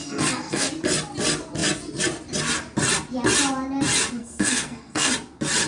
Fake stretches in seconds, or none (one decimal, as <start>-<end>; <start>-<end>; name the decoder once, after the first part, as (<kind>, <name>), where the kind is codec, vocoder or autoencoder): 0.0-0.7 (codec, SNAC); 4.2-5.1